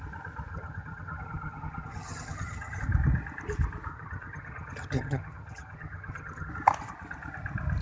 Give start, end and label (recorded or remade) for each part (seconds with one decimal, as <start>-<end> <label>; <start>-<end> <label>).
0.0-0.5 recorded; 0.5-2.8 remade; 2.8-3.9 recorded; 3.9-6.5 remade; 6.5-7.8 recorded